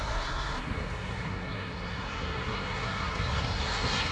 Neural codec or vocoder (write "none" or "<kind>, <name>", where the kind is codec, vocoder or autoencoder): codec, SNAC